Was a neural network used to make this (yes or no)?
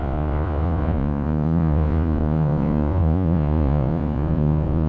yes